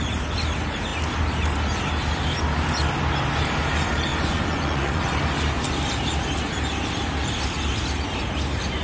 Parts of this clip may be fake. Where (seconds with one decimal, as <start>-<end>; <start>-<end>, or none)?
4.1-5.0